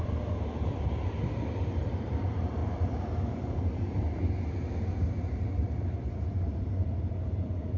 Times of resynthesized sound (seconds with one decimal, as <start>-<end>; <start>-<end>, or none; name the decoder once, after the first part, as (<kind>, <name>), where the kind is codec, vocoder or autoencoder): 0.0-7.8 (vocoder, BigVGAN v2)